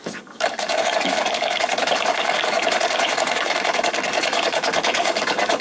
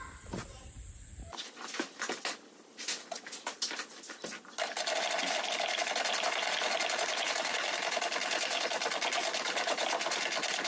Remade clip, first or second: first